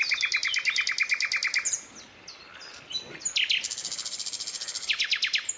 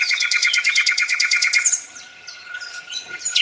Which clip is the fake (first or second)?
second